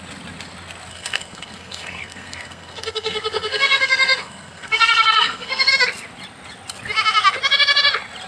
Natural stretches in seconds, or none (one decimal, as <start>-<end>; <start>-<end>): 0.0-0.9; 5.7-8.3